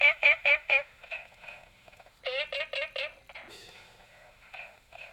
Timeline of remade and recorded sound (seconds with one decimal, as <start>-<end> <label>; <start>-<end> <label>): 0.0-2.2 remade; 2.2-3.5 recorded; 3.5-5.1 remade